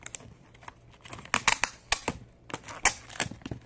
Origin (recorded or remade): recorded